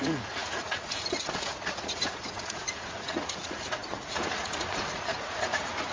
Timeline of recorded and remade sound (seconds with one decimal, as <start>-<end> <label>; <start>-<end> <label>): 0.0-5.9 remade